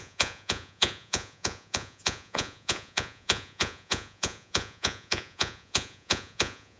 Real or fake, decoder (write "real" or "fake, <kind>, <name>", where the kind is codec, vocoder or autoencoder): fake, vocoder, Vocos